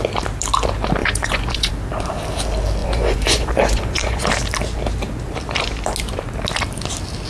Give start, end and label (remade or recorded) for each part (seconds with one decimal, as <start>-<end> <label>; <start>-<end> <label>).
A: 0.0-1.0 recorded; 1.0-1.7 remade; 1.7-2.8 recorded; 2.8-4.3 remade; 4.3-7.3 recorded

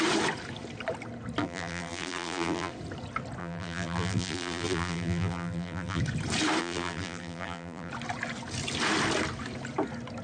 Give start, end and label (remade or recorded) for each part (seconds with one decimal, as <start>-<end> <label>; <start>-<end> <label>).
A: 0.0-1.4 recorded; 1.4-2.7 remade; 2.7-3.4 recorded; 3.4-6.0 remade; 6.0-6.6 recorded; 6.6-7.9 remade; 7.9-10.2 recorded

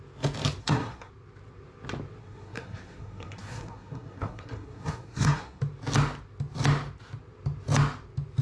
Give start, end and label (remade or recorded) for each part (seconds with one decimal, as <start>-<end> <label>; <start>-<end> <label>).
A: 0.0-0.6 recorded; 0.6-1.1 remade; 1.1-2.2 recorded; 2.2-5.6 remade; 5.6-8.4 recorded

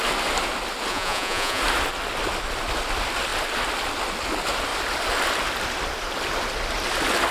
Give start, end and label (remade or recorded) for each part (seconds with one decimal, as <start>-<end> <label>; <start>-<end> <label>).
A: 0.0-0.9 recorded; 0.9-1.6 remade; 1.6-7.3 recorded

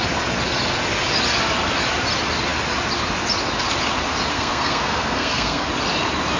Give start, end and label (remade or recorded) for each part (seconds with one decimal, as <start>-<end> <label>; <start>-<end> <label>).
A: 0.0-4.3 recorded; 4.3-5.7 remade; 5.7-6.4 recorded

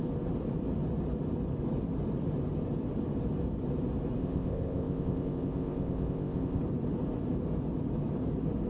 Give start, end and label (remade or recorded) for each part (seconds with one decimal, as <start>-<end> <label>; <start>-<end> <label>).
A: 0.0-4.2 recorded; 4.2-6.6 remade; 6.6-8.7 recorded

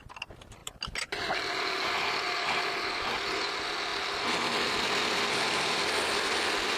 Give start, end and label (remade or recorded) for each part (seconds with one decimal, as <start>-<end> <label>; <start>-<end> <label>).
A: 0.0-0.6 recorded; 0.6-2.7 remade; 2.7-6.8 recorded

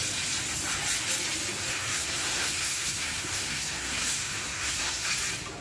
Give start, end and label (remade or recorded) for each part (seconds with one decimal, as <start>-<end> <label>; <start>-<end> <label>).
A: 0.0-1.7 recorded; 1.7-5.1 remade; 5.1-5.6 recorded